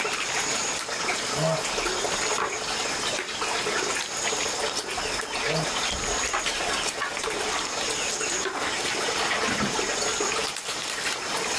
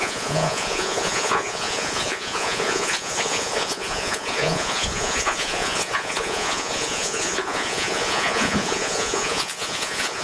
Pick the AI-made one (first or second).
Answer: second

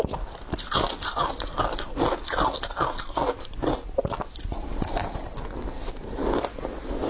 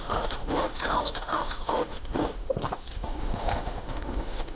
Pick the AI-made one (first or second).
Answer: second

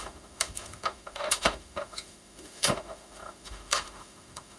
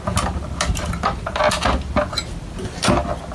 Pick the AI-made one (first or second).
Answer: first